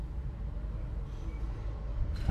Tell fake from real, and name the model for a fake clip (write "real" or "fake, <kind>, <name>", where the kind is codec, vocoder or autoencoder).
real